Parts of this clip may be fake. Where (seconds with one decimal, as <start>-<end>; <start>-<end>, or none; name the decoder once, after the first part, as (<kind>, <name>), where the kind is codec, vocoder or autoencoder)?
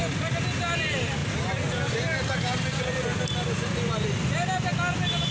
none